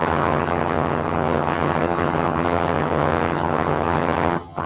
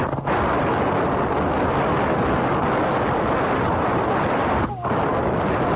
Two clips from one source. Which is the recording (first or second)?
second